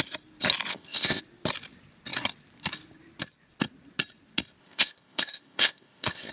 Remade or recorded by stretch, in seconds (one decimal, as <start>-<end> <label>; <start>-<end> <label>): 0.0-0.7 recorded; 0.7-1.2 remade; 1.2-4.6 recorded; 4.6-6.3 remade